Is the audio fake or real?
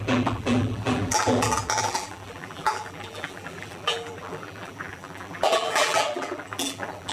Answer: fake